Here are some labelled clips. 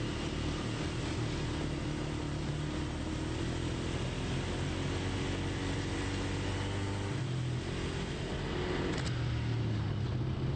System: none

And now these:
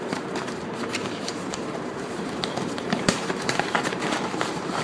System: vocoder, BigVGAN v2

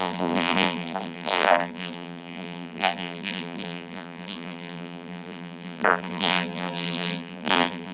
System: vocoder, BigVGAN v2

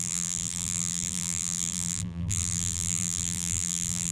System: vocoder, BigVGAN v2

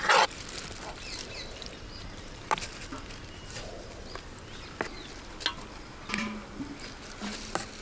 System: none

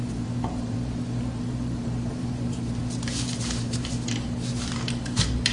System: vocoder, BigVGAN v2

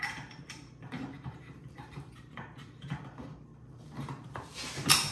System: vocoder, BigVGAN v2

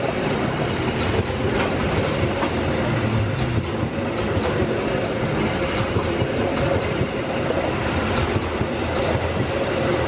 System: none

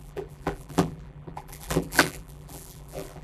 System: vocoder, BigVGAN v2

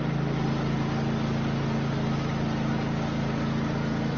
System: none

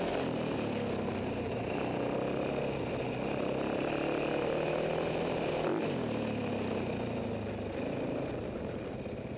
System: none